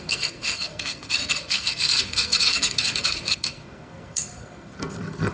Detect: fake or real fake